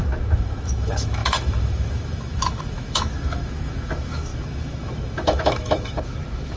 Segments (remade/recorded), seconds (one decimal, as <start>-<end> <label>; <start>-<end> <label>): 0.0-6.6 remade